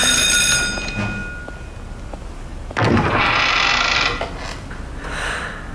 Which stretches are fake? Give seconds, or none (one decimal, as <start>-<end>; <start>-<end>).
none